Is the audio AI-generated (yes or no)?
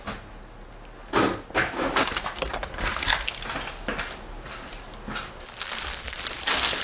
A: no